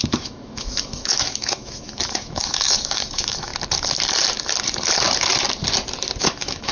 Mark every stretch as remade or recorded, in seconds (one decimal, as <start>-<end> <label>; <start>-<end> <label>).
0.0-3.5 remade; 3.5-6.2 recorded; 6.2-6.7 remade